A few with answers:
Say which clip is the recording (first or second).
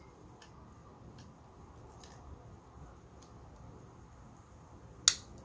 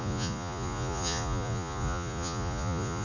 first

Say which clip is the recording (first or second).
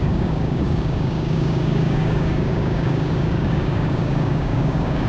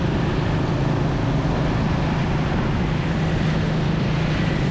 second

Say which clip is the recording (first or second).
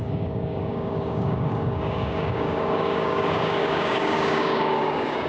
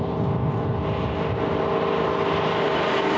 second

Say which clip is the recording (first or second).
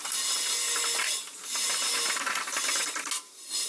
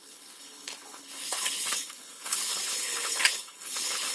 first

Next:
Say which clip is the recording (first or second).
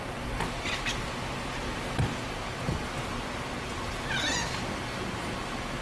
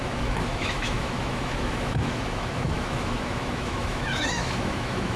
first